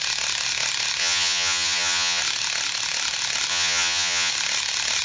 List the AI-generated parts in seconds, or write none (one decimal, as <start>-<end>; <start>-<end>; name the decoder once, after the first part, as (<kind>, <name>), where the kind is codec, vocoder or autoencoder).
1.0-2.2 (vocoder, HiFi-GAN); 3.5-4.3